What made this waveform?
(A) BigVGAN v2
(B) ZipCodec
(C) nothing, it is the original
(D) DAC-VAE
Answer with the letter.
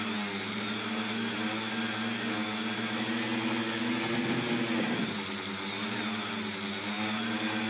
C